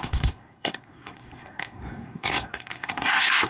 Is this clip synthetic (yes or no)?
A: yes